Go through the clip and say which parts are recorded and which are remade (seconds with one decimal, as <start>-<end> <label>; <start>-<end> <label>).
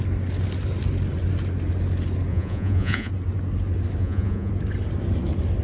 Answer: 0.0-2.3 recorded; 2.3-3.1 remade; 3.1-4.0 recorded; 4.0-4.5 remade; 4.5-5.6 recorded